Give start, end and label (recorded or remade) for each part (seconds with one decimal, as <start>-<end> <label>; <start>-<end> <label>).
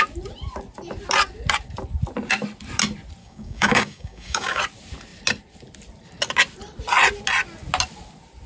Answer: 0.0-3.2 recorded; 3.2-4.6 remade; 4.6-8.5 recorded